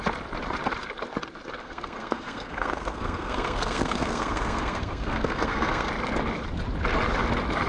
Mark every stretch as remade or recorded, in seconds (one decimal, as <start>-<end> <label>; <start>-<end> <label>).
0.0-1.6 recorded; 1.6-5.9 remade; 5.9-7.7 recorded